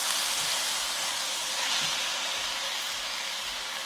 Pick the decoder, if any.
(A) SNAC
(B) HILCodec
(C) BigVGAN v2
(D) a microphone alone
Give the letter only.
D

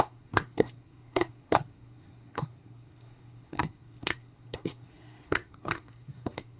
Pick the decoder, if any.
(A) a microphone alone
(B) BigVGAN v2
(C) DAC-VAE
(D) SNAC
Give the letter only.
D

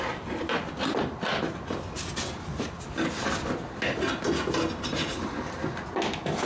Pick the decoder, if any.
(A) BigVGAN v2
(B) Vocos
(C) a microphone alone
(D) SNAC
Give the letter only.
C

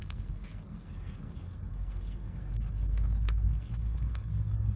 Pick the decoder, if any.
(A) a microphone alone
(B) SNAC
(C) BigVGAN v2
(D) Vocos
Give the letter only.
B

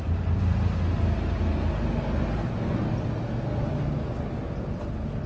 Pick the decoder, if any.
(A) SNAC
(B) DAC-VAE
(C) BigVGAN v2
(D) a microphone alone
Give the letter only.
D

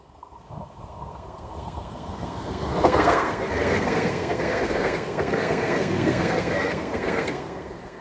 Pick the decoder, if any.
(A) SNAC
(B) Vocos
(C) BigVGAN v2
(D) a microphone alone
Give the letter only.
A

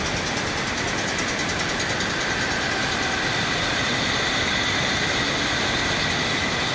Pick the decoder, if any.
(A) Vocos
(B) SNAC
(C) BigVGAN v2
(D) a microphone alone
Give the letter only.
D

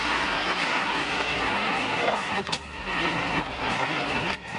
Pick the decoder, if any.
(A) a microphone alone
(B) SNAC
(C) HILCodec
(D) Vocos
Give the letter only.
B